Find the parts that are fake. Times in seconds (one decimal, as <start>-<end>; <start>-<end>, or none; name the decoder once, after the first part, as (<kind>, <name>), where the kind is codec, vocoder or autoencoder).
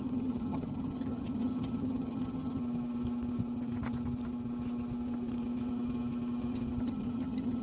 0.0-2.6 (vocoder, HiFi-GAN); 6.8-7.6